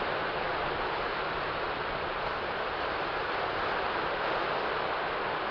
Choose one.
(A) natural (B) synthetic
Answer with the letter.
B